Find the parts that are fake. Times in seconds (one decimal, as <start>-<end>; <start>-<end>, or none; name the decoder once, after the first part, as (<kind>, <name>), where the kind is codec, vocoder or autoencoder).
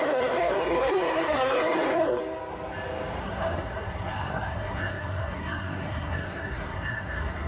0.0-2.2 (codec, SNAC); 3.2-7.5